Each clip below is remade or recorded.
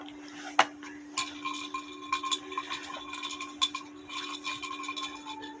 recorded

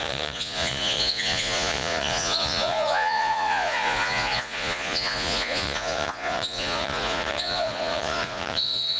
remade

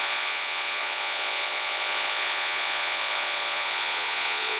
remade